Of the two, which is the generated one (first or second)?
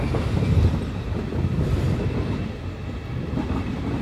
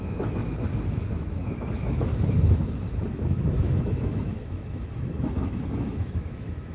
second